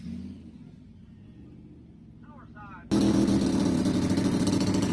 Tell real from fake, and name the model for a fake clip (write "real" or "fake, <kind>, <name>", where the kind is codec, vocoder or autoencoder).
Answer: real